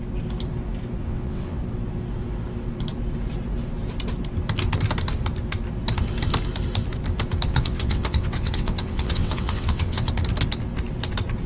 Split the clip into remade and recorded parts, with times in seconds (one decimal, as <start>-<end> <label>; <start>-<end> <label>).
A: 0.0-1.0 recorded; 1.0-1.6 remade; 1.6-7.5 recorded; 7.5-10.1 remade; 10.1-11.5 recorded